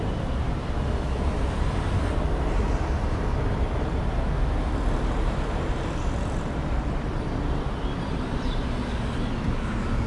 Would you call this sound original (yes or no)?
yes